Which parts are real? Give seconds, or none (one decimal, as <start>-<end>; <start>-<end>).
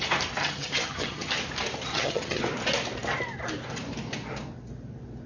0.0-0.4; 1.3-1.9; 2.4-5.3